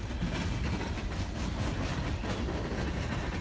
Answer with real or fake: real